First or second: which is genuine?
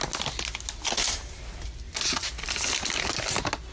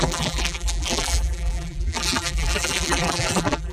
first